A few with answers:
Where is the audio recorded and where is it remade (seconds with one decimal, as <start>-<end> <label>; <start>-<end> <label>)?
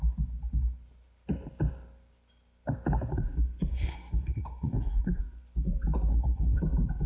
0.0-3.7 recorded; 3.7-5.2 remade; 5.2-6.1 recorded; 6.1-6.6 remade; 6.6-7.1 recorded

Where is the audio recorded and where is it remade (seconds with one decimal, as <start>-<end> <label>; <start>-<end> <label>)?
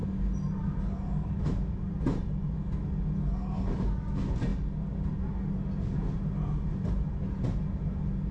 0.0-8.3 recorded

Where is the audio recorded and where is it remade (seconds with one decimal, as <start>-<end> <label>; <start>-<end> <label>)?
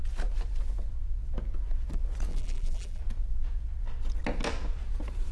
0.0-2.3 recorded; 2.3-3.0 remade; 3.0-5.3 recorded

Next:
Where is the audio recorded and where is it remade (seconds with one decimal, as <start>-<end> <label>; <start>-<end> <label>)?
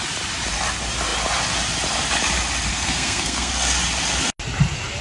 0.0-2.7 recorded; 2.7-3.5 remade; 3.5-5.0 recorded